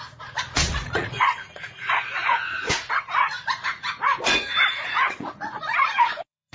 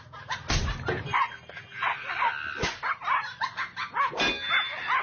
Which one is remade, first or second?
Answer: first